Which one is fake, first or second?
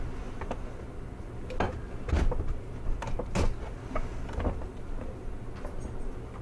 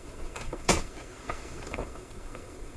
second